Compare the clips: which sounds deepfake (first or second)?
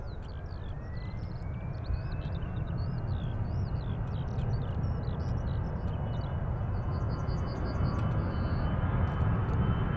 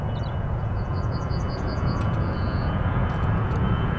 second